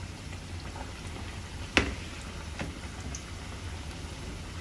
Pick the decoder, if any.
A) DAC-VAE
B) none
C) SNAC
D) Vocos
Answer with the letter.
B